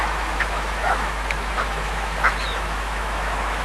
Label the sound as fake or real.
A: fake